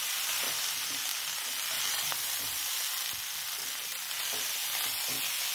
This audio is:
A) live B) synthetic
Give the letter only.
A